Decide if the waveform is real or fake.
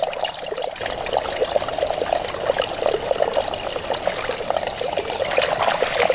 real